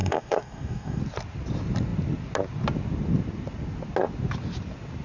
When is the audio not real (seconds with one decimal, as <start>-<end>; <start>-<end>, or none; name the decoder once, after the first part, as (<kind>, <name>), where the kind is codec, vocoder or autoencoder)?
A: 0.0-1.0 (codec, DAC)